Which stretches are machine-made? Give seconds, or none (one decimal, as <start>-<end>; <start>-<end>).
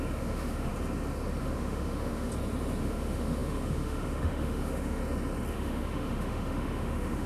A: 0.0-0.7; 1.4-2.3; 2.8-5.0; 5.5-7.3